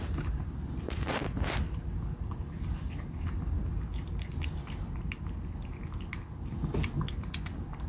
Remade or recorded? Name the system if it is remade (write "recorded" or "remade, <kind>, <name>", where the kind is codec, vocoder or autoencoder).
recorded